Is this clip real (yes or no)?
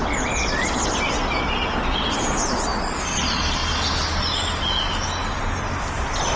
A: yes